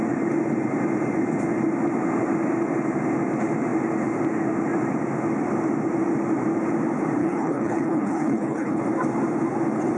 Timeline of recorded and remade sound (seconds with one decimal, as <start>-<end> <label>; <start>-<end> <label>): 0.0-7.2 recorded; 7.2-8.8 remade; 8.8-10.0 recorded